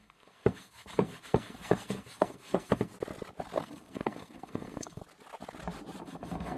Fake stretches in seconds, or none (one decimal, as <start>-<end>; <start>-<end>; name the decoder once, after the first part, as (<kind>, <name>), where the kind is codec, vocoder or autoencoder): 0.0-2.9 (codec, SNAC); 3.6-5.0; 6.0-6.6